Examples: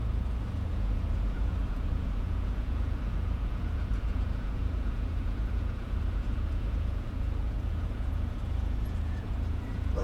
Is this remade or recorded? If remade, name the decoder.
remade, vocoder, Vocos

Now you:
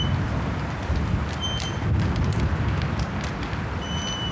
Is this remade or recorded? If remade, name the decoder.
recorded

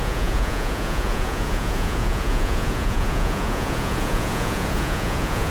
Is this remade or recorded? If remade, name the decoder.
remade, vocoder, Vocos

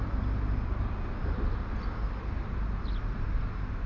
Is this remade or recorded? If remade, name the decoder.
recorded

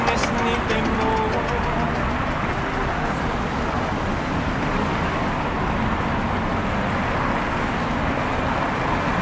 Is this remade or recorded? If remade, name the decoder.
recorded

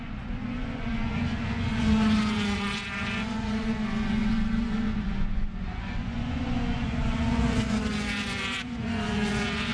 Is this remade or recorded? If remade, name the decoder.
remade, vocoder, Vocos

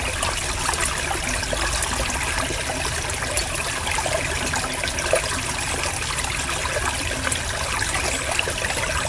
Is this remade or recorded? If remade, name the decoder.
recorded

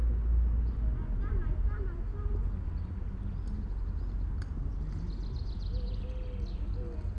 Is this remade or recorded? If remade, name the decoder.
recorded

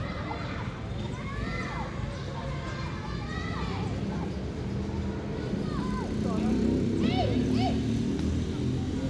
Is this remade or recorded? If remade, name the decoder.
recorded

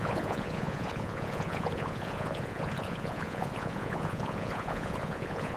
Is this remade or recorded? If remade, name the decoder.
remade, vocoder, Vocos